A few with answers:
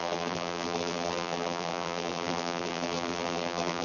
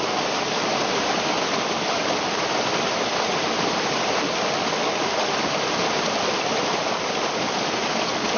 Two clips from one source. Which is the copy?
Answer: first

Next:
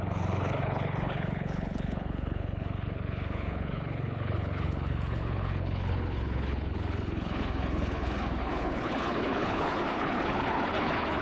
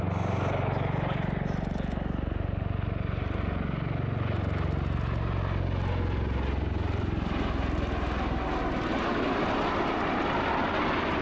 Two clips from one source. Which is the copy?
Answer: first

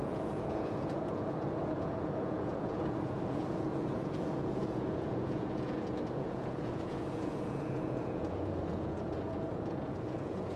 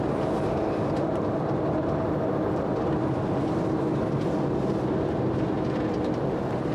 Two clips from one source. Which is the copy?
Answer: first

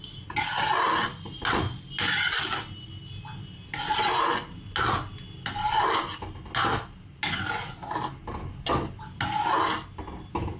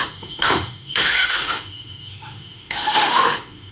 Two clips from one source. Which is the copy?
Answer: second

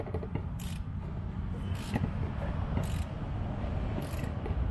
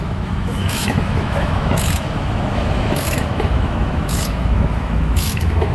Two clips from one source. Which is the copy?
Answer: second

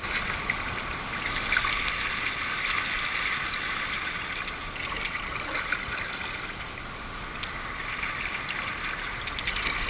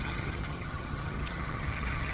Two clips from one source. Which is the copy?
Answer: second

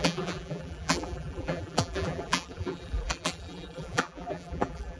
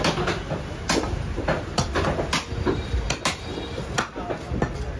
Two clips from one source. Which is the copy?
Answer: first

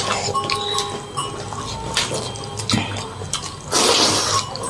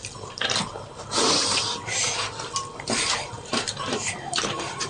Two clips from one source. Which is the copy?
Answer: second